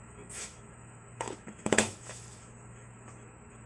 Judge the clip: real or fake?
fake